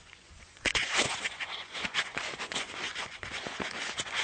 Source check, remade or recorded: remade